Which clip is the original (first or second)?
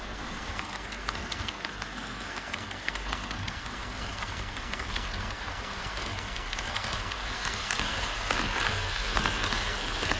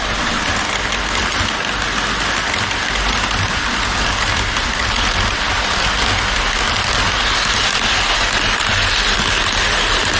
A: second